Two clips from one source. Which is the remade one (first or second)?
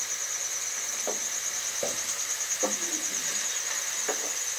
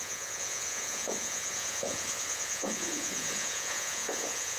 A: second